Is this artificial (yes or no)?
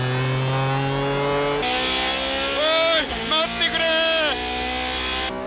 no